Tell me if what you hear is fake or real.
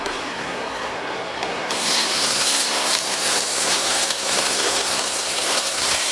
fake